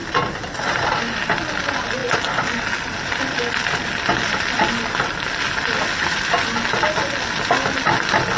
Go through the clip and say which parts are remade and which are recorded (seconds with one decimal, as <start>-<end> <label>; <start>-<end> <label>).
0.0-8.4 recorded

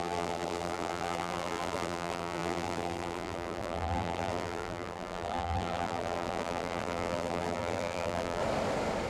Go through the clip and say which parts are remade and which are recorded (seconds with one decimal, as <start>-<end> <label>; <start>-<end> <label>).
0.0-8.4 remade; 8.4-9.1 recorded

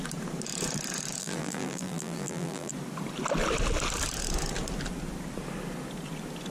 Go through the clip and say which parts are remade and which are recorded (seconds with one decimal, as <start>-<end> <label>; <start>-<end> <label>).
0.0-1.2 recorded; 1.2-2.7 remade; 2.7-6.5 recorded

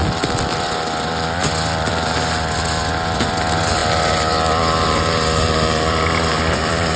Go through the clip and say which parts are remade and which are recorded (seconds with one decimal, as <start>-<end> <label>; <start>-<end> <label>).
0.0-7.0 remade

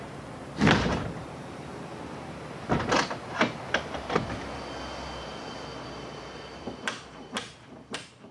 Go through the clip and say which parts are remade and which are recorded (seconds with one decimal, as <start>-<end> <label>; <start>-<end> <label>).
0.0-1.9 remade; 1.9-6.2 recorded; 6.2-8.3 remade